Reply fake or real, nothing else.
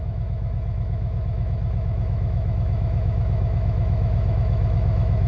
fake